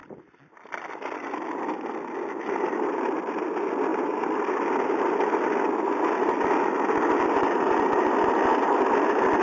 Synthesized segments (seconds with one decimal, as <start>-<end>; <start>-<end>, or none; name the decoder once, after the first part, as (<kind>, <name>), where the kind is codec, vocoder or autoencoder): none